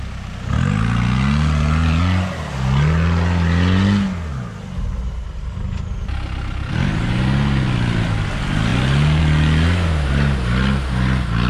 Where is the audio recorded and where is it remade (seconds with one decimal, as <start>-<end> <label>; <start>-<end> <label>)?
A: 0.0-11.5 recorded

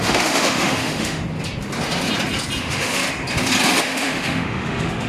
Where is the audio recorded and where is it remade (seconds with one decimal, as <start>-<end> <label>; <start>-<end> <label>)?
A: 0.0-1.2 remade; 1.2-2.6 recorded; 2.6-3.0 remade; 3.0-3.8 recorded; 3.8-5.1 remade

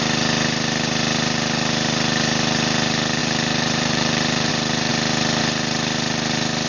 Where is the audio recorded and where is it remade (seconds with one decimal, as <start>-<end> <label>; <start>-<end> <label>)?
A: 0.0-3.2 recorded; 3.2-4.5 remade; 4.5-6.7 recorded

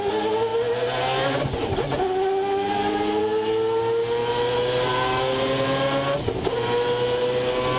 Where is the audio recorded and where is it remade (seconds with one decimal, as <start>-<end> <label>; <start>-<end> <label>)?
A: 0.0-7.8 recorded

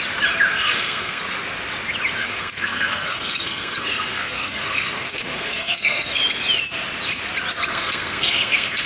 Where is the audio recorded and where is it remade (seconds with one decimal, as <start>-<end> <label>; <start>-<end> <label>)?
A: 0.0-0.5 recorded; 0.5-1.2 remade; 1.2-2.2 recorded; 2.2-6.2 remade; 6.2-7.7 recorded; 7.7-8.9 remade

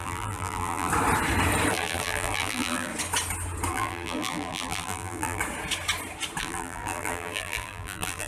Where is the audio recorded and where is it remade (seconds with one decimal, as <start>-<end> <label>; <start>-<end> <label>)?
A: 0.0-0.9 remade; 0.9-1.7 recorded; 1.7-2.9 remade; 2.9-3.7 recorded; 3.7-5.4 remade; 5.4-6.4 recorded; 6.4-8.3 remade

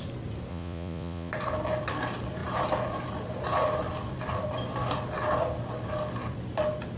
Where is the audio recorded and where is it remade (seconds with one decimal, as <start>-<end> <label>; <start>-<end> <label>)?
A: 0.0-0.5 recorded; 0.5-1.3 remade; 1.3-7.0 recorded